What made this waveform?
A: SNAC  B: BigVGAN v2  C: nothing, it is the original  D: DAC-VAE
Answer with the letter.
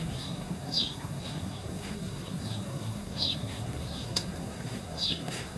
A